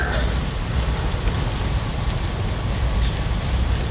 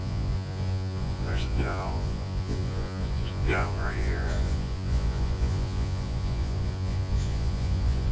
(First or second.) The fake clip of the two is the second